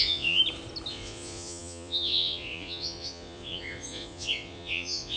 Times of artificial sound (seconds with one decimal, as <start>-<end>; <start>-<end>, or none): 0.0-0.4; 0.9-5.2